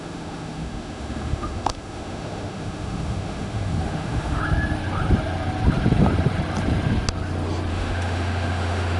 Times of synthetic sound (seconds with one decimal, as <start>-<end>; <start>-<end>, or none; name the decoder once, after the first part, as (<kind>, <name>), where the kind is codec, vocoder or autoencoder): 0.0-4.4 (autoencoder, DAC-VAE); 7.7-9.0